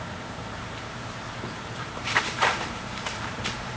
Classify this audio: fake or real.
fake